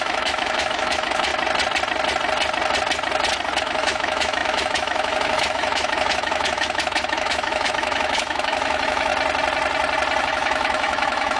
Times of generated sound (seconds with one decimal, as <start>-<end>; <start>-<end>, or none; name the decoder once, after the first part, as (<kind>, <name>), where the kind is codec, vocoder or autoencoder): 0.0-1.3 (autoencoder, DAC-VAE); 3.6-9.1; 10.2-11.4